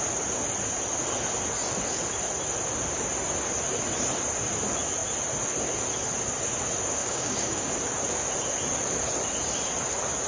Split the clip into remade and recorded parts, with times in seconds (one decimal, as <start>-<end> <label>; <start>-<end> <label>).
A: 0.0-7.0 recorded; 7.0-7.7 remade; 7.7-10.3 recorded